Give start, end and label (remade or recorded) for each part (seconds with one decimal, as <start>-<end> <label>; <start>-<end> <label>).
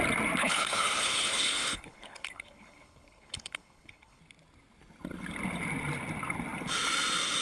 0.0-0.4 recorded; 0.4-4.2 remade; 4.2-7.4 recorded